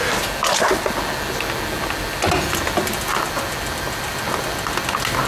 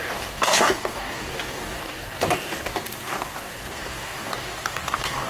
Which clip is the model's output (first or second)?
second